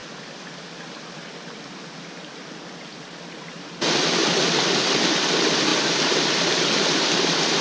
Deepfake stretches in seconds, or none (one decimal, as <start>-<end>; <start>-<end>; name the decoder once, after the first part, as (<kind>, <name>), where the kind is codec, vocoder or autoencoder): none